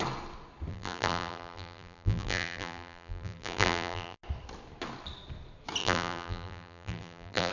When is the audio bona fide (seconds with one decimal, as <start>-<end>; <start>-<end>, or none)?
0.0-0.7; 4.2-5.8